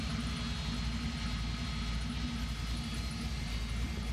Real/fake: real